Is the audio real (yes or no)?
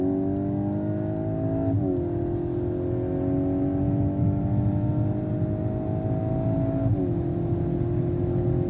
yes